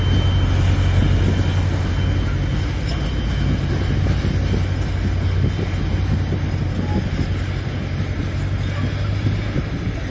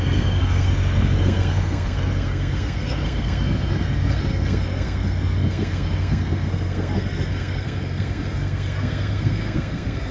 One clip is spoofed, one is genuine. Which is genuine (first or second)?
first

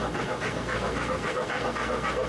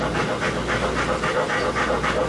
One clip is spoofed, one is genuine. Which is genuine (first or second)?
second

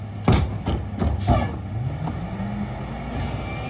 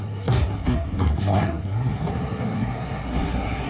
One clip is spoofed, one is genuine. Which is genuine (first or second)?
first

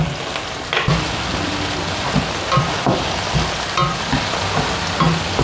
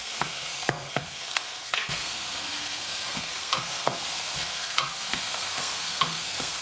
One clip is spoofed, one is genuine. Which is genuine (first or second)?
first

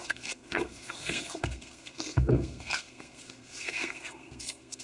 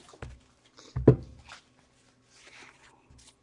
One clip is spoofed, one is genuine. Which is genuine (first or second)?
second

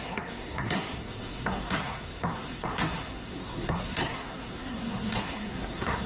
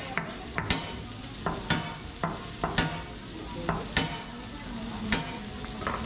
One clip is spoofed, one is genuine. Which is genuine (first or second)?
second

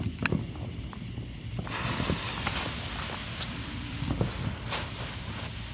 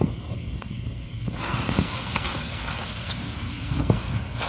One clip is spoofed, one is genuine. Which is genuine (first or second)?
first